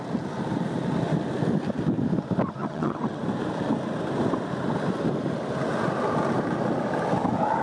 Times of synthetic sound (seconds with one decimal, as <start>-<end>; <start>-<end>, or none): 2.6-3.2